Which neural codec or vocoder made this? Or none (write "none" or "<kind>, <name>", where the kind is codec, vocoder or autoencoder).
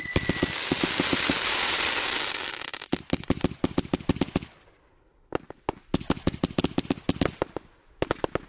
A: none